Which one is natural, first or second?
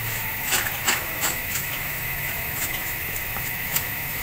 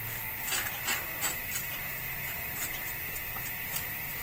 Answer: second